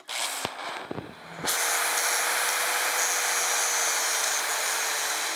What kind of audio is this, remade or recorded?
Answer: recorded